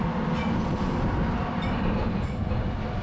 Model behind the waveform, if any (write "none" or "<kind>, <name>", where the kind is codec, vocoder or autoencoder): none